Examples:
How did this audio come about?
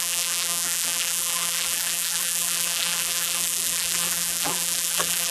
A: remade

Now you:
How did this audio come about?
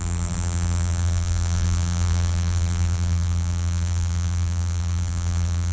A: remade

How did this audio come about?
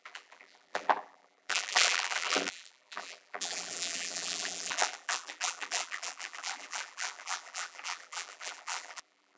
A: remade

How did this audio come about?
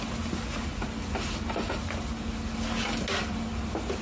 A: recorded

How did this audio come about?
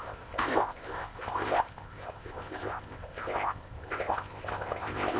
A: remade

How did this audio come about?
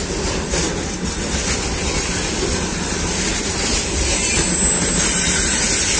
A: recorded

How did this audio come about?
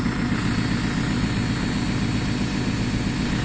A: recorded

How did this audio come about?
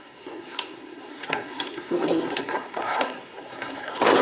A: remade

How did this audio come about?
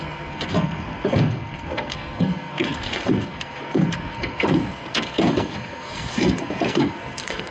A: remade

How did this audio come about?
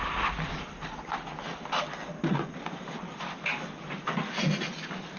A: recorded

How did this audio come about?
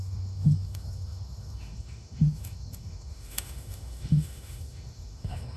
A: remade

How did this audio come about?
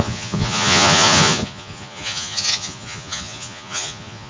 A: remade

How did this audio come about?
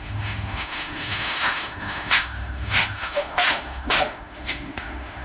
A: remade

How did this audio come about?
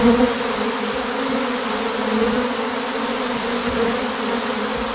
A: recorded